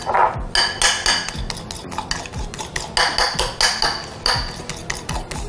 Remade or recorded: recorded